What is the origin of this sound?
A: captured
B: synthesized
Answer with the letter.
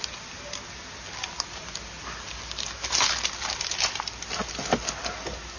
A